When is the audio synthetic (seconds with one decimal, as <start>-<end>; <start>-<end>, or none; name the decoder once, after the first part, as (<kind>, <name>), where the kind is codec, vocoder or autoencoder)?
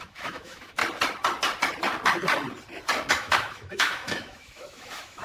0.0-0.8 (autoencoder, DAC-VAE); 3.1-5.2